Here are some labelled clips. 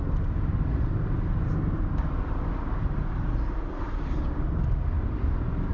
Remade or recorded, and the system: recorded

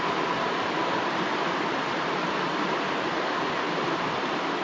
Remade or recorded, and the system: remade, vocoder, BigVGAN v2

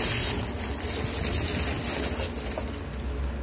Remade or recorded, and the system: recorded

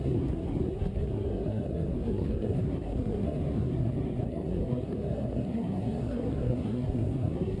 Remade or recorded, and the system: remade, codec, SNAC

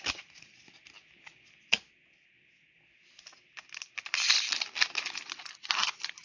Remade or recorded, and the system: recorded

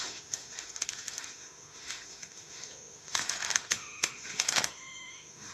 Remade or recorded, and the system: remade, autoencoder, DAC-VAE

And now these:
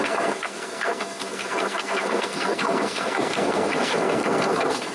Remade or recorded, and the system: remade, codec, SNAC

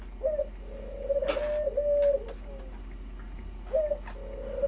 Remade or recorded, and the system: recorded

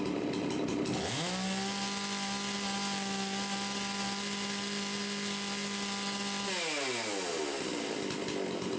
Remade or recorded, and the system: recorded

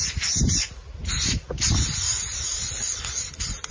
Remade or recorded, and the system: recorded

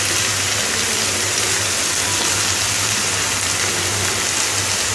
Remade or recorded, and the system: recorded